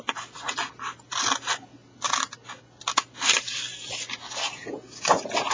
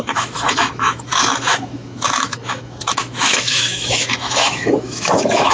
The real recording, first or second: first